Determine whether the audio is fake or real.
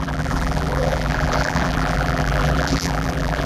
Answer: fake